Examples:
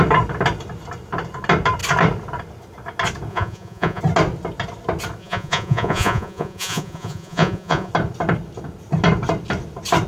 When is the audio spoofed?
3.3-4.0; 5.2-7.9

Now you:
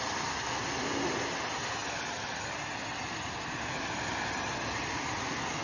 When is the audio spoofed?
none

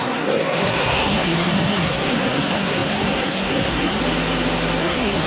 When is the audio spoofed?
0.0-4.0; 4.8-5.3